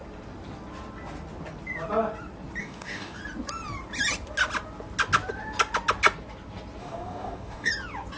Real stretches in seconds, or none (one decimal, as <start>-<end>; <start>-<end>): 0.0-2.6; 3.2-6.8; 7.7-8.2